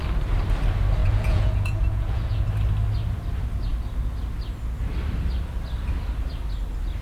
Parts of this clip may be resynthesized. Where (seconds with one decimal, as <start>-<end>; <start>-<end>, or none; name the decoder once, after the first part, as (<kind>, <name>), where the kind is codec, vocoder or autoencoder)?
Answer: 1.0-2.5 (vocoder, Vocos)